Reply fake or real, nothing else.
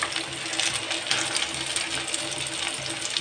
real